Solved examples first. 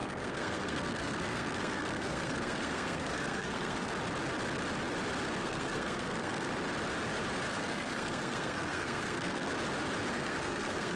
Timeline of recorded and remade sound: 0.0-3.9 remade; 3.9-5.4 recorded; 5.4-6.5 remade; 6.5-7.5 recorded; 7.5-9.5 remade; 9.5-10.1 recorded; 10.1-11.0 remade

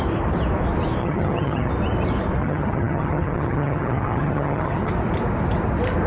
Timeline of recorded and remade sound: 0.0-1.0 recorded; 1.0-1.7 remade; 1.7-2.4 recorded; 2.4-4.9 remade; 4.9-6.1 recorded